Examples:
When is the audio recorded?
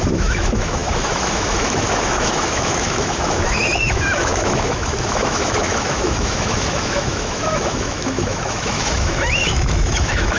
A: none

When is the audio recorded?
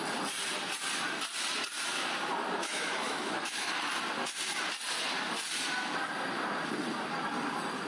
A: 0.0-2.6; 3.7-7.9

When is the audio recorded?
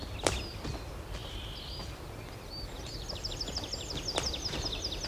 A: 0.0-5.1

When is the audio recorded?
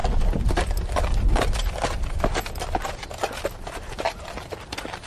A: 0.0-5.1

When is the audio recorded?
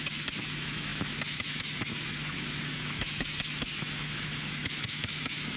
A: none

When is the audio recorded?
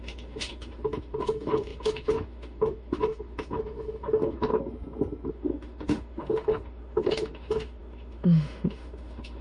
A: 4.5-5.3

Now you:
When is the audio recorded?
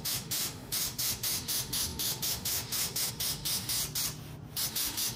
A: 3.8-4.7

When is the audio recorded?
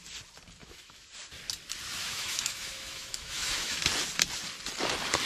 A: 0.0-0.6; 1.1-2.0; 3.8-5.3